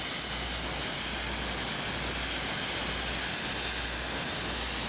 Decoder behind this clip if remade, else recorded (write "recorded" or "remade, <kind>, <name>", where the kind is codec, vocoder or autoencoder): recorded